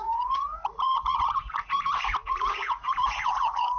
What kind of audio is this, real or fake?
fake